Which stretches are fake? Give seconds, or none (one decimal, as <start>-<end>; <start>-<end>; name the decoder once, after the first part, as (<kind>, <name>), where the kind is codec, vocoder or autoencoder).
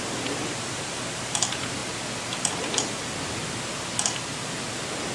0.0-1.8 (vocoder, BigVGAN v2)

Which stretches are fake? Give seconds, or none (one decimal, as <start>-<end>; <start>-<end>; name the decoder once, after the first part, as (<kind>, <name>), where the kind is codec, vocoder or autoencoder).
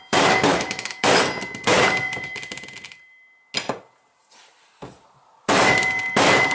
0.5-1.2 (autoencoder, DAC-VAE)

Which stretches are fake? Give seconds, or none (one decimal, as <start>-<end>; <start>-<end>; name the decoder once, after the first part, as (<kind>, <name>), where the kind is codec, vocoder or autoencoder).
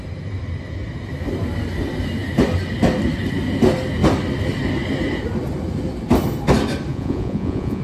6.9-7.8 (vocoder, Vocos)